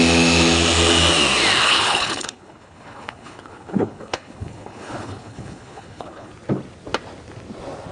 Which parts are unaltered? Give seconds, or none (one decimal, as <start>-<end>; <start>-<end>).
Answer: 0.0-1.6; 6.3-7.9